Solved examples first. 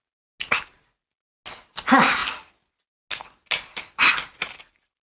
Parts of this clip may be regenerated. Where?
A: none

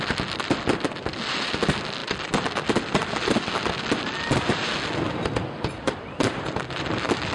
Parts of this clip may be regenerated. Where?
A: none

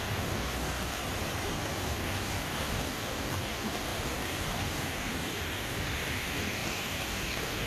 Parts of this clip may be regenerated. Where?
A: 0.0-1.0 (codec, DAC); 1.5-7.7

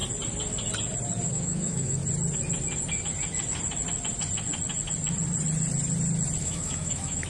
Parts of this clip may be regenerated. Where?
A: 1.3-2.0 (autoencoder, DAC-VAE); 6.4-7.3

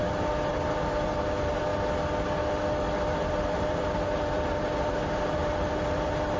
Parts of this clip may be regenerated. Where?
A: 0.5-1.7 (vocoder, BigVGAN v2); 3.0-6.4

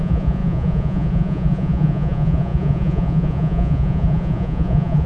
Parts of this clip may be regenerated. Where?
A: 0.0-5.1 (vocoder, Vocos)

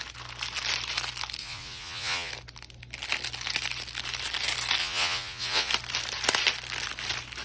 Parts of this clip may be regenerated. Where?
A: 1.4-2.3 (vocoder, Vocos); 4.8-5.7